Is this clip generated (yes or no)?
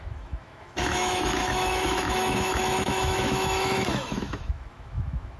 yes